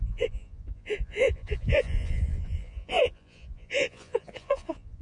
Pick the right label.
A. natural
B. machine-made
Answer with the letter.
B